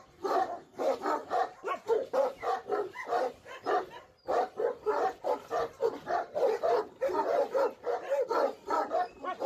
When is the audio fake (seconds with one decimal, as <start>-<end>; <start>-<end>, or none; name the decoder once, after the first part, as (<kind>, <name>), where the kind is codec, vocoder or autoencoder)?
1.2-3.2 (vocoder, BigVGAN v2)